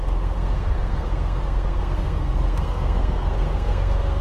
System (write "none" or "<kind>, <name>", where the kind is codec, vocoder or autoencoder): codec, SNAC